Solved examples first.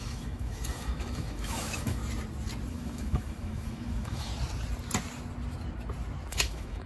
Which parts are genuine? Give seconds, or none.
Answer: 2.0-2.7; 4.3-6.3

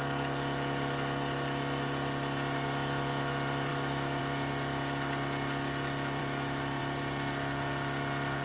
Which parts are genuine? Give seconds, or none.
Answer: 0.0-3.7; 4.2-6.2; 6.8-8.4

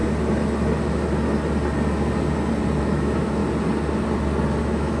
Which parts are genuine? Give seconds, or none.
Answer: 0.0-2.8; 3.4-4.6

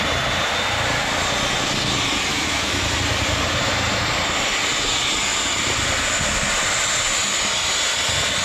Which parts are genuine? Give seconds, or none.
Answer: 0.0-2.3; 2.8-8.4

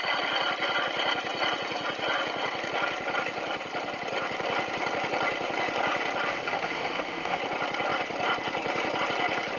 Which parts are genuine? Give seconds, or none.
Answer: 0.0-6.3; 7.4-9.6

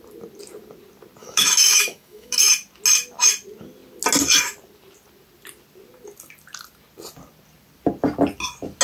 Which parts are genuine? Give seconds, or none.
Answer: 0.0-1.2; 2.5-8.8